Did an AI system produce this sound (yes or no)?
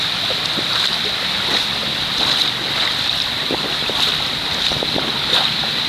yes